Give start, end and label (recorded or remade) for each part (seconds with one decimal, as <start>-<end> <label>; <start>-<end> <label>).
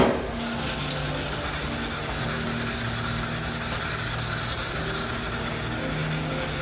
0.0-6.6 recorded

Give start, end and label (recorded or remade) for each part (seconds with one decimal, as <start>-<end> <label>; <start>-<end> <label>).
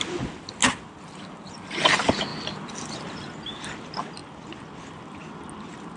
0.0-6.0 recorded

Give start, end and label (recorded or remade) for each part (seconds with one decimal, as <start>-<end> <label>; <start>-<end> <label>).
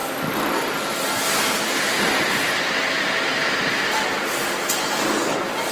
0.0-5.7 recorded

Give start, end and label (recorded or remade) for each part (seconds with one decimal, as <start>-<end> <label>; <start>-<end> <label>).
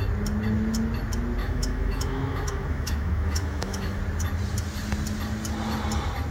0.0-1.4 recorded; 1.4-4.0 remade; 4.0-6.3 recorded